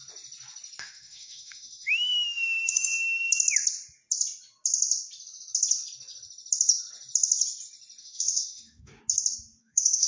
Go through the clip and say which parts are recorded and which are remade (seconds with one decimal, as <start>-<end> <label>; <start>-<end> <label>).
0.0-0.8 recorded; 0.8-2.9 remade; 2.9-8.0 recorded; 8.0-8.9 remade; 8.9-9.6 recorded; 9.6-10.1 remade